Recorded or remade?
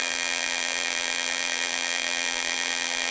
remade